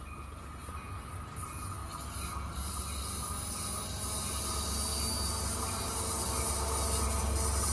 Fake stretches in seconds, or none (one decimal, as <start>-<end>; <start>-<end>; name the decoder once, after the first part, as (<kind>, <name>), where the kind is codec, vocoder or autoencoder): none